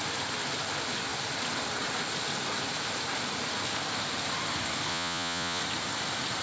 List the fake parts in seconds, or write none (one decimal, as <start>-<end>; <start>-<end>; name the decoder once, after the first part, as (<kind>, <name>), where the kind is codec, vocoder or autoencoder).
4.9-5.6 (vocoder, Vocos)

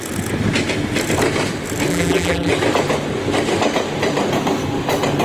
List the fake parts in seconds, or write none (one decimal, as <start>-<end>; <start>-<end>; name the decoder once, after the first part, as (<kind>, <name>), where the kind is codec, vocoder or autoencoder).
1.9-2.5 (vocoder, BigVGAN v2)

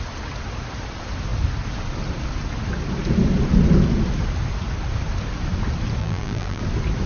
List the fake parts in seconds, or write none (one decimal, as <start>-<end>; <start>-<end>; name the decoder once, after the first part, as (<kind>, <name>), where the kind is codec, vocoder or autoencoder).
6.0-6.6 (vocoder, BigVGAN v2)

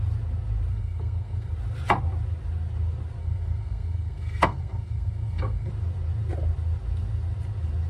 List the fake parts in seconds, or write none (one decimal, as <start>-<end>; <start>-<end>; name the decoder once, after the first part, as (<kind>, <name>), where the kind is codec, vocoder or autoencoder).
0.7-1.5 (codec, SNAC); 3.2-5.7

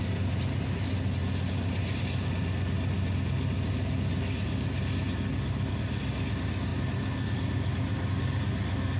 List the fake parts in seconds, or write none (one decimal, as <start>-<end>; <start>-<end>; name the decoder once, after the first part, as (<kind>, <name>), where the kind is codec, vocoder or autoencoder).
none

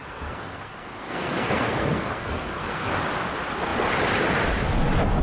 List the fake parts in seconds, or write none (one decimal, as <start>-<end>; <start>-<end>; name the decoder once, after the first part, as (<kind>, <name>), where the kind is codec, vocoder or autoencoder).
0.0-2.9 (codec, SNAC)

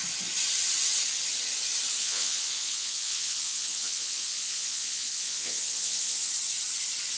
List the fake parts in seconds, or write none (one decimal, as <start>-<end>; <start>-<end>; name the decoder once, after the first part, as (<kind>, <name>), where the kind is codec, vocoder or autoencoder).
2.0-6.3 (vocoder, Vocos)